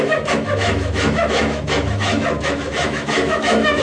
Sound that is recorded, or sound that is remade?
remade